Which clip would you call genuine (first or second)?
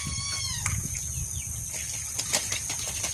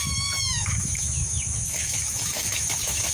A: first